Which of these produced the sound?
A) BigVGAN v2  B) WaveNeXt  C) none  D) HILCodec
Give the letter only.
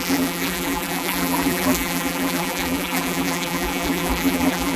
A